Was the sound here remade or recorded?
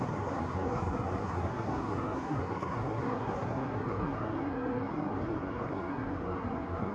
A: remade